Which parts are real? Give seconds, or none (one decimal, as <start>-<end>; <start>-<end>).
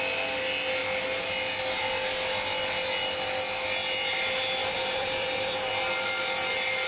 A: 0.0-4.6; 5.7-6.9